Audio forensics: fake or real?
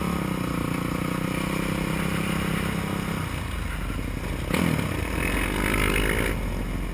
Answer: real